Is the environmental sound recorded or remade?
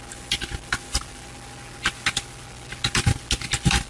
recorded